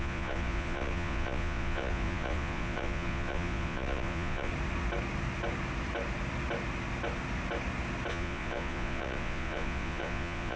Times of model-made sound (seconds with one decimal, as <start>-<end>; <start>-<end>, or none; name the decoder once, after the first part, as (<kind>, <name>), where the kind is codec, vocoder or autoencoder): 0.0-4.5 (vocoder, Vocos); 8.1-10.6